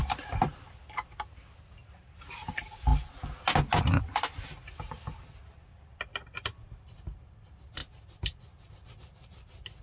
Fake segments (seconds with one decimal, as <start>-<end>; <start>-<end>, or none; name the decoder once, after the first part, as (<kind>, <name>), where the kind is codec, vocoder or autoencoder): none